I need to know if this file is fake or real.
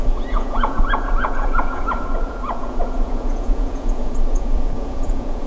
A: fake